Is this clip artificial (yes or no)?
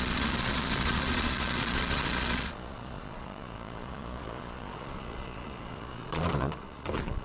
yes